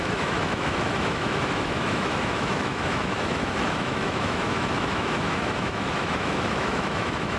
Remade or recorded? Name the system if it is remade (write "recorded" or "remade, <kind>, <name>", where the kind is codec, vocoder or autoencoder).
remade, autoencoder, DAC-VAE